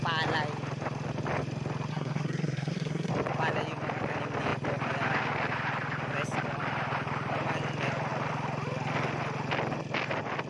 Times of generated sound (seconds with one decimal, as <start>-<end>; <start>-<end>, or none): 1.9-3.1